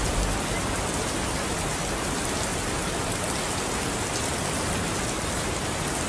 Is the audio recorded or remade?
recorded